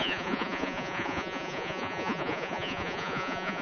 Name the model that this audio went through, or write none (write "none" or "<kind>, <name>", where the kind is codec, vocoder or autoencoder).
vocoder, Vocos